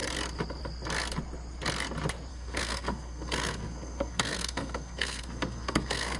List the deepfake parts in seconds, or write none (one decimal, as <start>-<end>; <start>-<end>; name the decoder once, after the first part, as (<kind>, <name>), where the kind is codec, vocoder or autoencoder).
2.3-6.2 (codec, SNAC)